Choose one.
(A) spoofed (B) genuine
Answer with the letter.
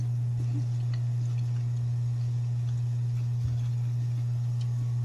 B